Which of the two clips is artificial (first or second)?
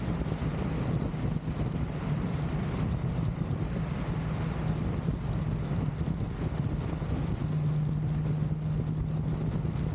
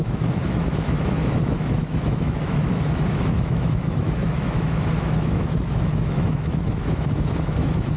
second